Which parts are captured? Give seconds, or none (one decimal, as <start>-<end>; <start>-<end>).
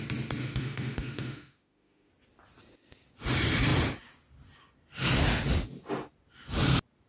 0.0-0.4; 2.1-7.1